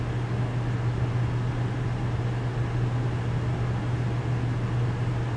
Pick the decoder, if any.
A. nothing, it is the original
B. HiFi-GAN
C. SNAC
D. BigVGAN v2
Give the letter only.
A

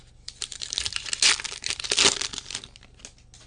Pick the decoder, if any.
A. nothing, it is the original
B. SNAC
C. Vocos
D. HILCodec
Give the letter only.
A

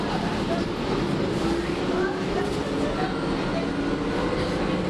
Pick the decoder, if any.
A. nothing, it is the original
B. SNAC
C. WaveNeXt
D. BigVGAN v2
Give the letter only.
A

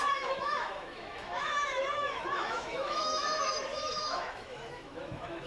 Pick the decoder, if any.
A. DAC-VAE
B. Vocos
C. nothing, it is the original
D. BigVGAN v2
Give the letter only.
A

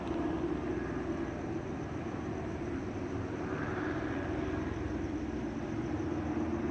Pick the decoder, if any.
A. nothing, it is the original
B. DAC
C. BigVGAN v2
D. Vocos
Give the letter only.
A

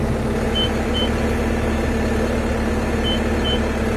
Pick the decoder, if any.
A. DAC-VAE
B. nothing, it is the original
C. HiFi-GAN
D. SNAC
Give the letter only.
B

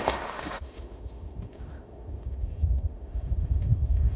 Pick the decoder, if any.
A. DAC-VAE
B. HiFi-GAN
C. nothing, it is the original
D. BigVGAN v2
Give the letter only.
A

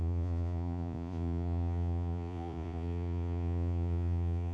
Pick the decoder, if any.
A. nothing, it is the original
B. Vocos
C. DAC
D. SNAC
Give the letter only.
B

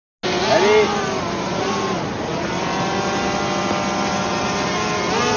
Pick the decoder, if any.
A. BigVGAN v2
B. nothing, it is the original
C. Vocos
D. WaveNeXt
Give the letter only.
B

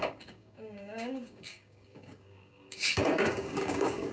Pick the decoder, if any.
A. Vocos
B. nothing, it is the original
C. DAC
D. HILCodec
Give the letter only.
C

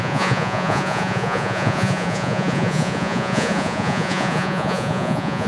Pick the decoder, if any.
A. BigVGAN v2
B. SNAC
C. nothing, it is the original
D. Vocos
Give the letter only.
D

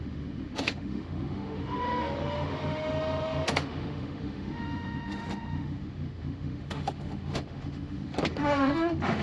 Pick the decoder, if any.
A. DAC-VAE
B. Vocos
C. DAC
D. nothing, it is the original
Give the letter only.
A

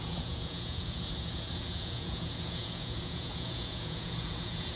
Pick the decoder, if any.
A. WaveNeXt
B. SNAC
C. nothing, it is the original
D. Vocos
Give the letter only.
D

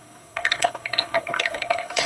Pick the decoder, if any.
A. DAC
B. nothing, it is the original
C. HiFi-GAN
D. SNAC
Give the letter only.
D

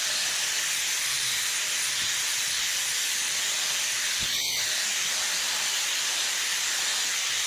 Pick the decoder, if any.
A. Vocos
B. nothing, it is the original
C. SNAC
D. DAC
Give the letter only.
B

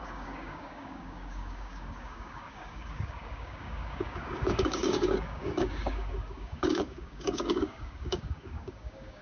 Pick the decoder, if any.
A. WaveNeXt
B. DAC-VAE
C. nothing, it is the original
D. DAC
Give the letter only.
D